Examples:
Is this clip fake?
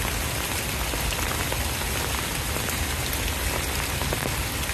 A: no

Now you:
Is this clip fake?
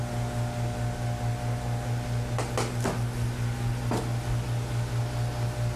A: no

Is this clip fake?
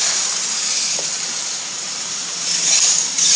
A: yes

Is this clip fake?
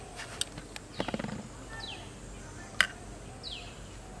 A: no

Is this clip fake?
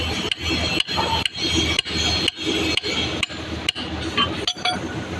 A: no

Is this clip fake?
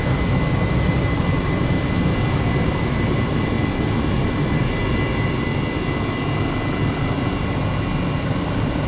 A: no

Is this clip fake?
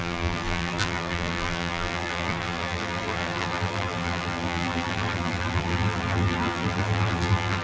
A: yes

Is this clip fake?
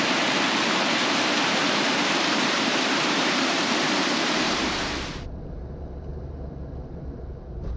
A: yes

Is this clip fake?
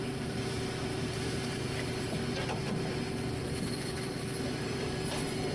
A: yes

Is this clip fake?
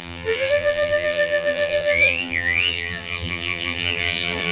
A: yes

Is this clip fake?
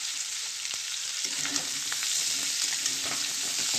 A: yes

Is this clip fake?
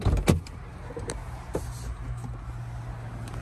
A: no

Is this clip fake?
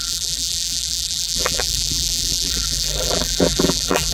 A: yes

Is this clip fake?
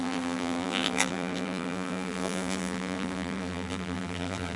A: yes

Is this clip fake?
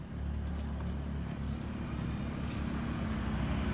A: no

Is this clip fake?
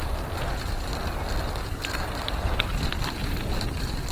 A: no